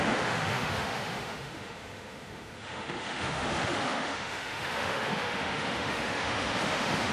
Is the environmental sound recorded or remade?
remade